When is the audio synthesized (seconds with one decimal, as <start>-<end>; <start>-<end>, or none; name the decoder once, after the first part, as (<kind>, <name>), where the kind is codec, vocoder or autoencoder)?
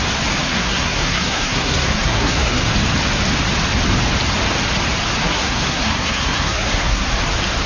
0.4-2.7 (codec, SNAC); 5.2-7.1